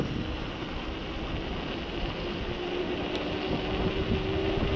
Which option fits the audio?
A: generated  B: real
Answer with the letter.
B